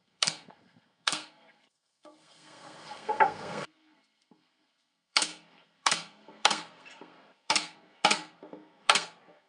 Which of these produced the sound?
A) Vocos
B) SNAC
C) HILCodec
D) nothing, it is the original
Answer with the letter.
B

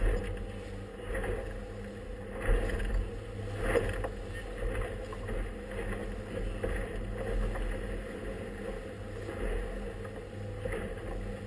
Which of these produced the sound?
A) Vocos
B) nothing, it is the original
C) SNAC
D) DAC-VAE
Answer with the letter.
B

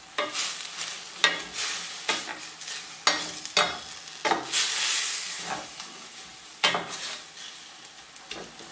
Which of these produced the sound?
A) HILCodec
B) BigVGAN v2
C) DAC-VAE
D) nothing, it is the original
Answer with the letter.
D